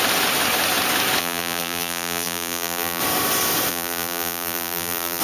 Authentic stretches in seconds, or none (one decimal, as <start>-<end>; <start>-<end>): 0.0-1.2; 3.0-3.7